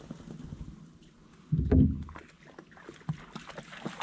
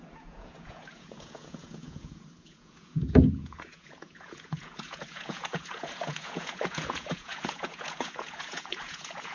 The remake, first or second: second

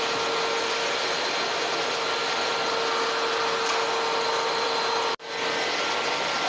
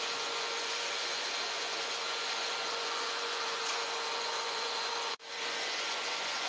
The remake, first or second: second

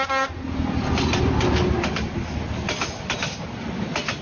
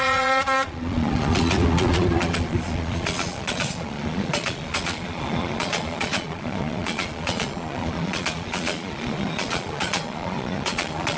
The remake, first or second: second